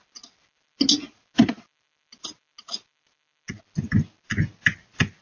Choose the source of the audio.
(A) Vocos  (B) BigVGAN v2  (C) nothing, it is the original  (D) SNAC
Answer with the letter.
C